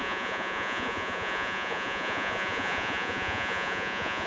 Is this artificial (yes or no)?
yes